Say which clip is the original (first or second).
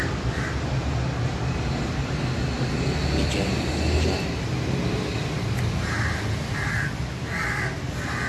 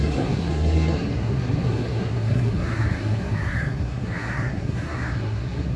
first